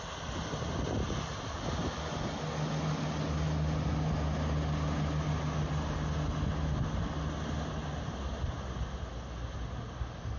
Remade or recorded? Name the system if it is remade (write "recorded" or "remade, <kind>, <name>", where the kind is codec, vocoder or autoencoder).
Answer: recorded